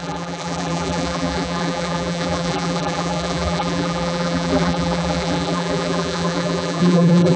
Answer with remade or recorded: remade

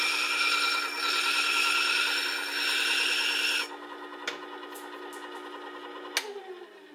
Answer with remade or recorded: recorded